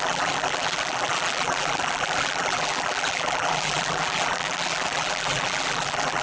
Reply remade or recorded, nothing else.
remade